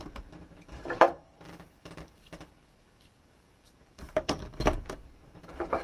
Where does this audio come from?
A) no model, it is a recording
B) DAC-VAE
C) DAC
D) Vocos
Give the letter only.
C